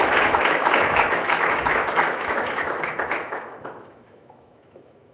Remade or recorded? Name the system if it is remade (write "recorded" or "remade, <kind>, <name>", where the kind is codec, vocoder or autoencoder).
remade, autoencoder, DAC-VAE